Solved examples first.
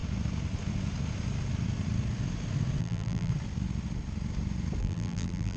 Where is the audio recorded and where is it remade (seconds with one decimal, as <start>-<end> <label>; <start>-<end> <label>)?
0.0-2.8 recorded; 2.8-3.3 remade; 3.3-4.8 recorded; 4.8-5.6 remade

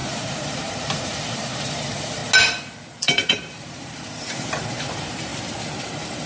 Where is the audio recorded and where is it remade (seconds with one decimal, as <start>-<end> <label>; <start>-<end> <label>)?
0.0-2.2 remade; 2.2-3.0 recorded; 3.0-5.3 remade; 5.3-5.8 recorded; 5.8-6.3 remade

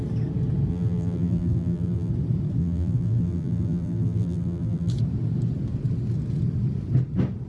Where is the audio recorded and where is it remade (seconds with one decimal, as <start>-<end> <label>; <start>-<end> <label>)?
0.0-0.7 recorded; 0.7-2.1 remade; 2.1-2.6 recorded; 2.6-4.9 remade; 4.9-7.5 recorded

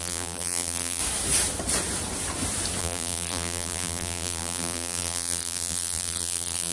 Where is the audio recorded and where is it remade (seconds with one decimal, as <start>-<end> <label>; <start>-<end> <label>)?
0.0-1.0 remade; 1.0-2.8 recorded; 2.8-6.7 remade

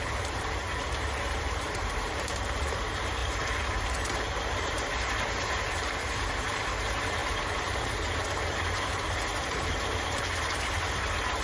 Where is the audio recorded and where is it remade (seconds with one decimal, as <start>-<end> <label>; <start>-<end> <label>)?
0.0-11.4 remade